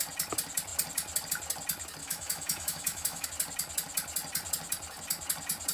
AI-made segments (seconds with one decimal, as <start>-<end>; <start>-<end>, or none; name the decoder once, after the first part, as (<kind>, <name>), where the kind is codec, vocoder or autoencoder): 2.0-3.3 (autoencoder, DAC-VAE)